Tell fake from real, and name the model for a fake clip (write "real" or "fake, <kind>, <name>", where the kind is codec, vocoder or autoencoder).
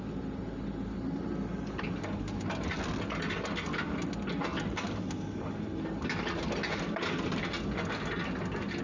real